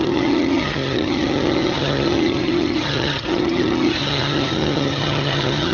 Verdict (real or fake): fake